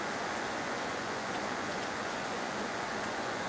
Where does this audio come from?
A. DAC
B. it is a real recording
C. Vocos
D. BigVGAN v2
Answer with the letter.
C